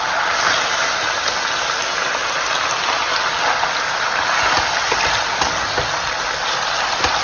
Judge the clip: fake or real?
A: real